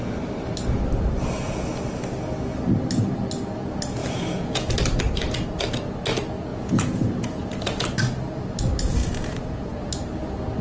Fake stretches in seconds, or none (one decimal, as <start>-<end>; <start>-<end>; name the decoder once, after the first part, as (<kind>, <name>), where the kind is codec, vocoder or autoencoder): 4.0-4.7 (vocoder, Vocos); 6.5-7.4; 9.0-9.8